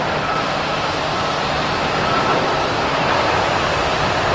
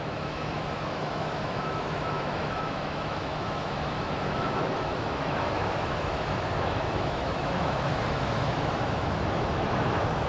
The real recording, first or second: first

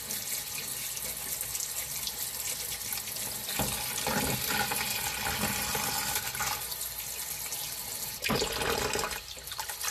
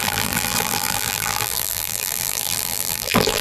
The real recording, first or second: first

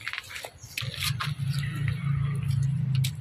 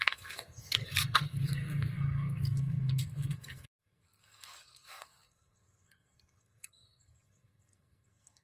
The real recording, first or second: first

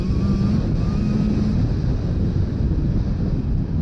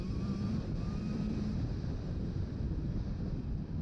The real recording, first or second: first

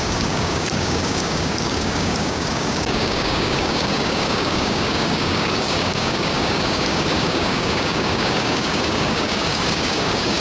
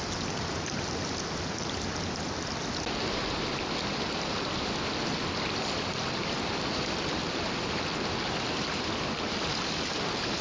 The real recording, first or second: second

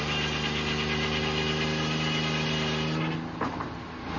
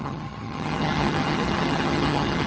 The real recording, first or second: first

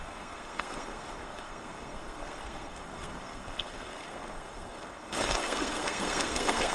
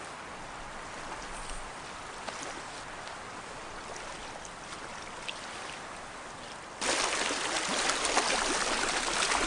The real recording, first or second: second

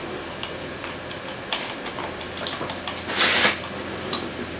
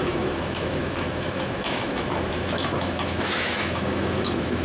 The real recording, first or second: first